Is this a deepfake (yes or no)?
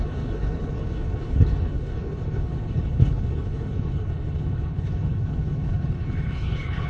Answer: yes